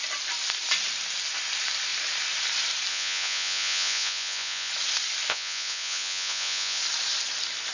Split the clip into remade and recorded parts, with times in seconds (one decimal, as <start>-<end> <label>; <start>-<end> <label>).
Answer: 0.0-2.9 recorded; 2.9-4.7 remade; 4.7-5.3 recorded; 5.3-6.8 remade; 6.8-7.7 recorded